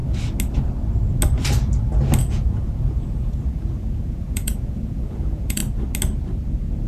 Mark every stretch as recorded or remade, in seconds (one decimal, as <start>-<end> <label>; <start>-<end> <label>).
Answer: 0.0-2.2 recorded; 2.2-5.6 remade; 5.6-6.9 recorded